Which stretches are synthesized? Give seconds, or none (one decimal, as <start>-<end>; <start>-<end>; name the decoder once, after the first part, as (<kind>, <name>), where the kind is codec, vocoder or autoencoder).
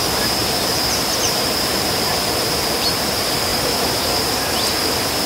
0.4-2.1 (vocoder, BigVGAN v2)